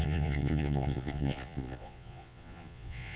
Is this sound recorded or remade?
remade